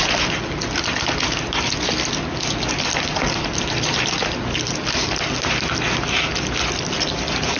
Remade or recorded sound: recorded